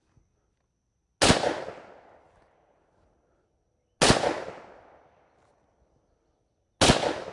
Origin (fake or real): real